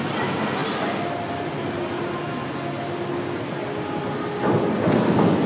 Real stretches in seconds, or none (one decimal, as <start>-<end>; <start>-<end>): 0.0-5.5